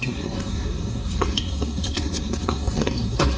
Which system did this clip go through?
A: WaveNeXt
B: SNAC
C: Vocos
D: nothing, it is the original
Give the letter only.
B